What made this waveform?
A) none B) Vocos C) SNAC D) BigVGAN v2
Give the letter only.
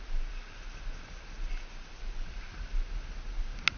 A